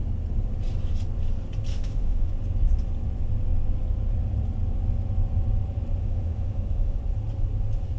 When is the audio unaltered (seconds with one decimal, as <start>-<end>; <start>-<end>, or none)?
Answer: 0.0-1.7; 2.3-6.0; 7.0-8.0